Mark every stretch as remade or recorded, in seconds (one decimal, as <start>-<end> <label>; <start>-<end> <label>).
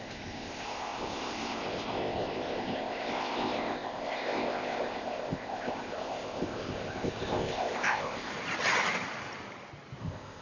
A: 0.0-8.3 remade; 8.3-10.0 recorded; 10.0-10.4 remade